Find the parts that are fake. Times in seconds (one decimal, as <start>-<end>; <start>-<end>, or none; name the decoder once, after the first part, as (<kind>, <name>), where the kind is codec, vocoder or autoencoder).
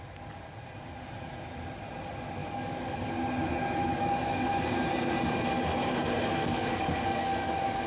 2.4-3.1 (codec, DAC); 3.8-4.5; 6.4-7.9